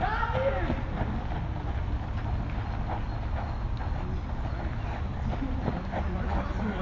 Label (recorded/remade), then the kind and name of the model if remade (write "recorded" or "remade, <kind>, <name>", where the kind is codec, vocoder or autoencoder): recorded